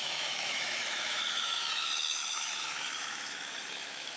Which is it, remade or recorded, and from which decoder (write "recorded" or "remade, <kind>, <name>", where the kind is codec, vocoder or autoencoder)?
remade, autoencoder, DAC-VAE